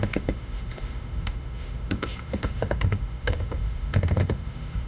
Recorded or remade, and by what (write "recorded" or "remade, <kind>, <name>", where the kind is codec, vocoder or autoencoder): remade, autoencoder, DAC-VAE